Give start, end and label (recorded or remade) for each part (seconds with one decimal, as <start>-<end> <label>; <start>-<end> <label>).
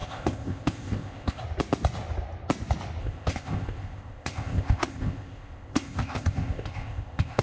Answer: 0.0-1.4 remade; 1.4-3.0 recorded; 3.0-7.4 remade